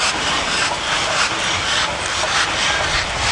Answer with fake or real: fake